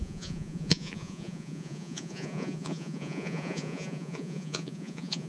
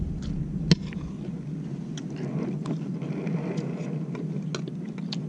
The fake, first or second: first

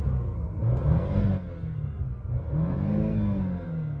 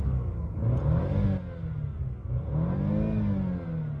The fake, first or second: first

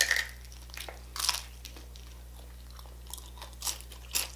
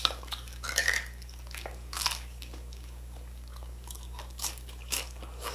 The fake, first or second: second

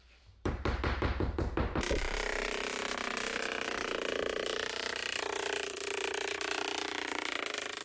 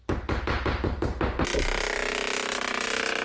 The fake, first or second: first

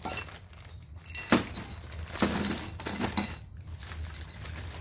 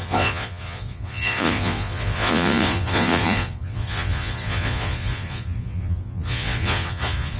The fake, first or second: second